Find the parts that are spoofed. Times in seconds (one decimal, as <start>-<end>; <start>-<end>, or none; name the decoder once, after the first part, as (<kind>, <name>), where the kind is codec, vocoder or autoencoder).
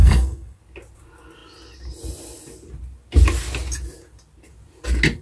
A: 0.0-0.6 (codec, SNAC)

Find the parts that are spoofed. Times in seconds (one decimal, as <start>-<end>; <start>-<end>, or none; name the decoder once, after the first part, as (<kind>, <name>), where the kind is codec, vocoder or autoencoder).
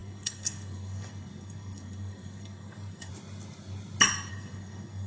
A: 0.0-3.1 (codec, SNAC); 4.3-5.1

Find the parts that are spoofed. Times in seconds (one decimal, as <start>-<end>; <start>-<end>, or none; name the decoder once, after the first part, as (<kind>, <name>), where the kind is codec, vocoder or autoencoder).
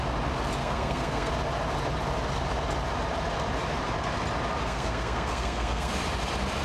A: 0.6-1.3 (codec, SNAC); 4.6-5.9